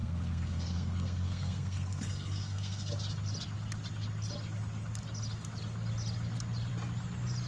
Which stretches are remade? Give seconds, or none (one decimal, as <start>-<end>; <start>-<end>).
0.0-2.9